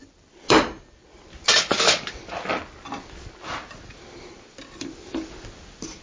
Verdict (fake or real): real